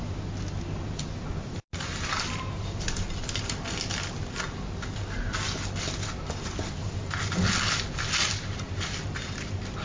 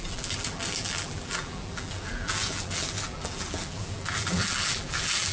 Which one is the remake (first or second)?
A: second